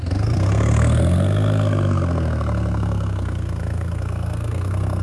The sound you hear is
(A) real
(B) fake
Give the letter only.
B